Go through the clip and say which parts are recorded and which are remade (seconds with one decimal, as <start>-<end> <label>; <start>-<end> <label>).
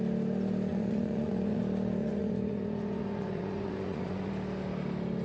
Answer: 0.0-0.7 recorded; 0.7-1.6 remade; 1.6-2.0 recorded; 2.0-4.3 remade; 4.3-5.2 recorded